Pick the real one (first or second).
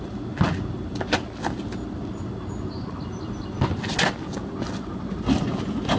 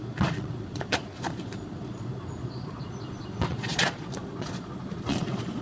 first